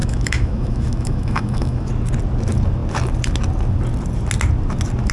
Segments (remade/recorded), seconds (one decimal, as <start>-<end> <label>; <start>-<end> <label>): 0.0-1.9 remade; 1.9-5.1 recorded